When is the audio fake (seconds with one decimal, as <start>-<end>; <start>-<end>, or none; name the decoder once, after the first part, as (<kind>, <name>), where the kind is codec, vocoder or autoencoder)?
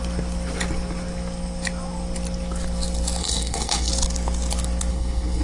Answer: 3.2-3.9 (codec, SNAC); 4.9-5.4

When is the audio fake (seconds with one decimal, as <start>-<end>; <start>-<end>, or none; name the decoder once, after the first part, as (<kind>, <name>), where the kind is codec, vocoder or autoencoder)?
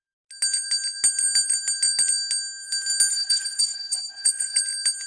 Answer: 3.1-4.6 (codec, HILCodec)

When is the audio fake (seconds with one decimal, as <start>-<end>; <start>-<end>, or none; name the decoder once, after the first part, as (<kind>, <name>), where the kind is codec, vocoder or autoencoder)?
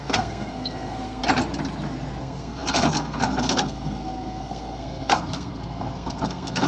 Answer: 0.0-1.2 (codec, SNAC); 2.2-6.7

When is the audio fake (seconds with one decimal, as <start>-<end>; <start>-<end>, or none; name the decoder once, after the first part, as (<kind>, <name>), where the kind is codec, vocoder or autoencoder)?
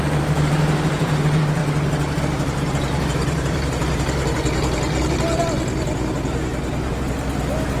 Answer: 0.0-1.6 (vocoder, BigVGAN v2); 2.2-6.5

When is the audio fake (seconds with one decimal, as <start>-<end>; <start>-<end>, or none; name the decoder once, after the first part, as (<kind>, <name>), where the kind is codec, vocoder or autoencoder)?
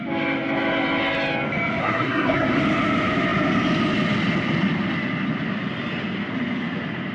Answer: 1.8-2.6 (codec, SNAC)